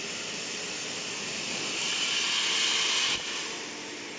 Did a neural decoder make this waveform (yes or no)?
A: no